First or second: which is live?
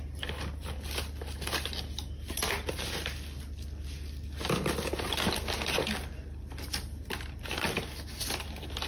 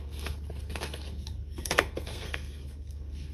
first